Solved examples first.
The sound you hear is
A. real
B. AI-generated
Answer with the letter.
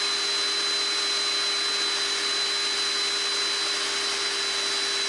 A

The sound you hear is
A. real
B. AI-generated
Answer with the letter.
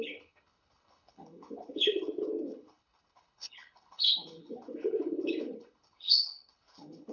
B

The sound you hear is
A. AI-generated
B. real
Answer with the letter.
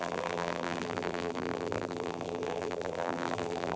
A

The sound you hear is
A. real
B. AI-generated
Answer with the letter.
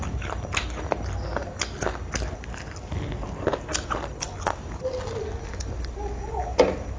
A